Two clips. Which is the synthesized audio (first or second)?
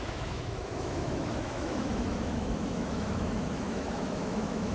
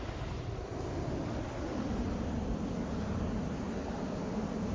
first